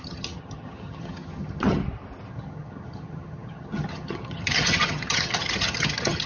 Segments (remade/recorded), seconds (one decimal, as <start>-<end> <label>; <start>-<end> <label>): 0.0-1.8 remade; 1.8-2.3 recorded; 2.3-6.3 remade